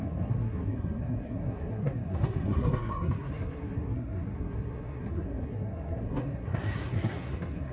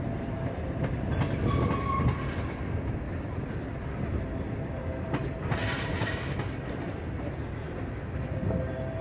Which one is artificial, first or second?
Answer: first